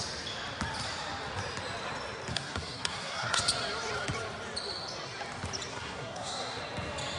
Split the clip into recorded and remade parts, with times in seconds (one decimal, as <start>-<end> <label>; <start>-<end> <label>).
0.0-2.3 recorded; 2.3-3.4 remade; 3.4-5.7 recorded; 5.7-6.6 remade; 6.6-7.2 recorded